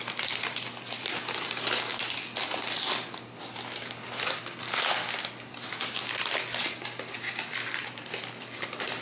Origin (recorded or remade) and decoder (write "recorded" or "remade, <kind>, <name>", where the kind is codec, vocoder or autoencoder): recorded